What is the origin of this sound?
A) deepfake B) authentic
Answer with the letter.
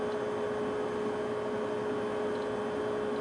B